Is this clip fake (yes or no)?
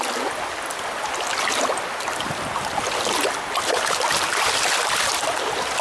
no